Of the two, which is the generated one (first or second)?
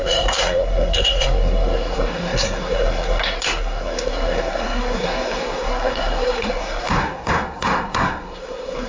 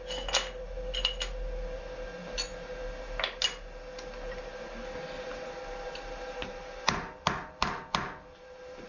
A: first